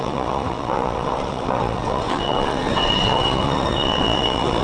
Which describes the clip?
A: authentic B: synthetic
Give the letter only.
B